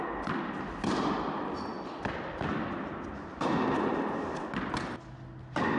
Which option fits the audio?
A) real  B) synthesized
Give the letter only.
A